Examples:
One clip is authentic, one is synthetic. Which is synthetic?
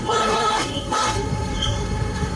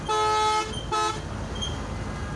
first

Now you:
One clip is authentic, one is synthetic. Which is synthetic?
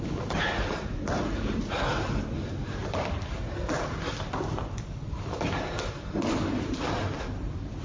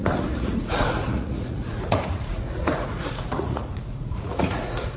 second